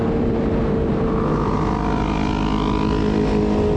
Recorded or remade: recorded